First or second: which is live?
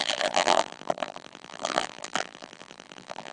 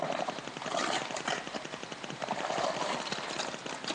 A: second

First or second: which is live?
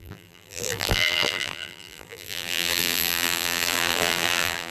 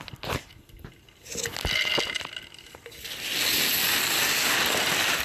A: second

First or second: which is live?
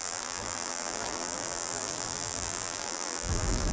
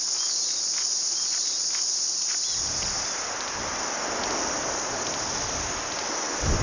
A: second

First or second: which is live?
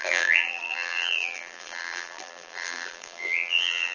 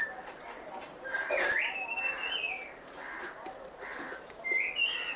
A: second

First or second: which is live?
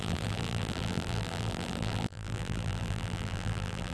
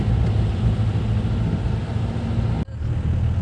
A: second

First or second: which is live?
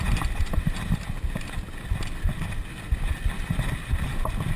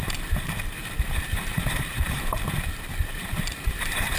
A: first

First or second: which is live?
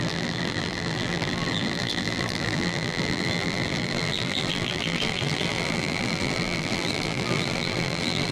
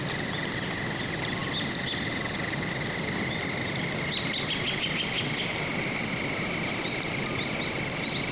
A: second